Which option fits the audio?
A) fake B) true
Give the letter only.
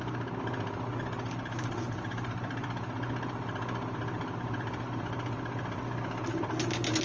B